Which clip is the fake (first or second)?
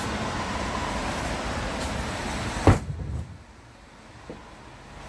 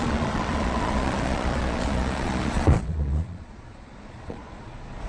second